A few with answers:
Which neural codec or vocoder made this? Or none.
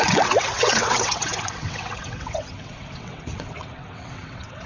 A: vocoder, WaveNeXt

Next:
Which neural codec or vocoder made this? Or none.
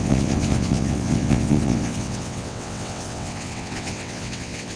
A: vocoder, WaveNeXt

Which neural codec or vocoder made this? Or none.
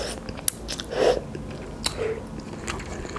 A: none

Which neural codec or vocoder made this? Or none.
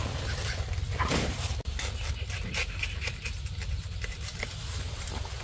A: none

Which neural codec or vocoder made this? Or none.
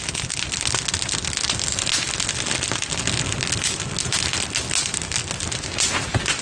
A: none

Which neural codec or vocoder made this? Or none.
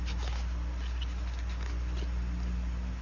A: none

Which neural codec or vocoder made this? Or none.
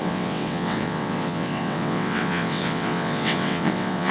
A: vocoder, WaveNeXt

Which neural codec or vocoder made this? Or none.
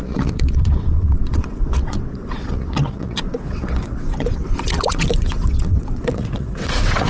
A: vocoder, WaveNeXt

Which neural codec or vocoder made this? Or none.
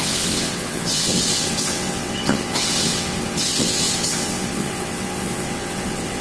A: vocoder, WaveNeXt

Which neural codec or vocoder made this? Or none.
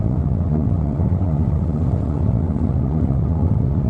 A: vocoder, WaveNeXt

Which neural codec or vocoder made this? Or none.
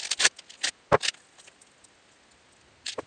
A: none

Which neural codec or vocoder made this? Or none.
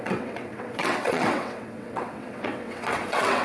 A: vocoder, WaveNeXt